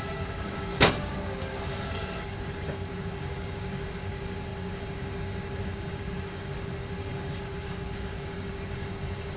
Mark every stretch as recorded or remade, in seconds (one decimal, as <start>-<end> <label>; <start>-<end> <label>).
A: 0.0-9.4 remade